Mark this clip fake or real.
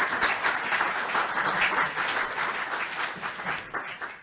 real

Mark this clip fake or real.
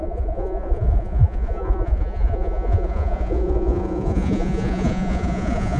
fake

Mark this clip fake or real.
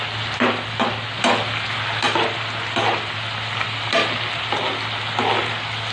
real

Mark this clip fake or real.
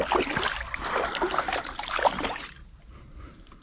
real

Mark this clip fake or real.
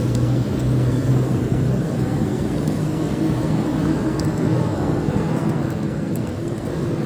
fake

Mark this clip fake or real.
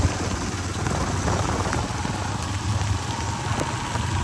real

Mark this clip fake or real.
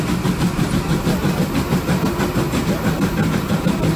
real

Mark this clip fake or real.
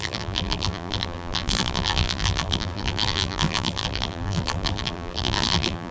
fake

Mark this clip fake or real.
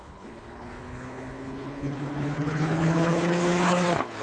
fake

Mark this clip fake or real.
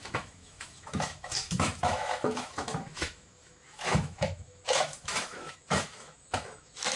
fake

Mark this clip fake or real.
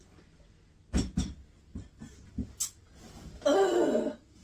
real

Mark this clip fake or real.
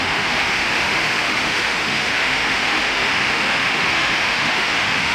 fake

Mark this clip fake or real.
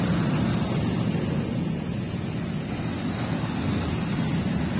real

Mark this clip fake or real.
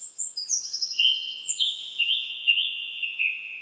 fake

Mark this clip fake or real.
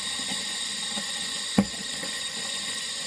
fake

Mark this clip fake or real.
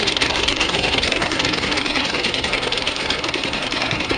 fake